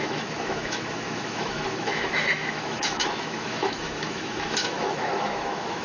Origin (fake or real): fake